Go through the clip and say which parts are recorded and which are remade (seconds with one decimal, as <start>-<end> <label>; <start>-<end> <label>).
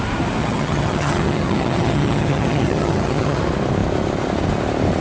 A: 0.0-0.4 recorded; 0.4-3.4 remade; 3.4-5.0 recorded